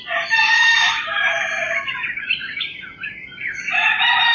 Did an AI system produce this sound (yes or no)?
no